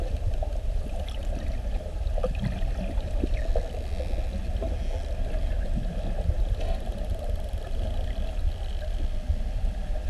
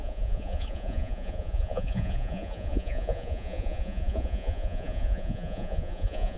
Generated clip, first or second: second